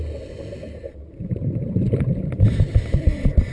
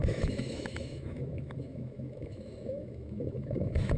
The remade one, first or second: second